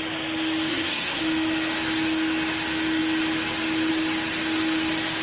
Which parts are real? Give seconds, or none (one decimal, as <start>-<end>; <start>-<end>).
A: 0.0-0.7; 1.2-5.2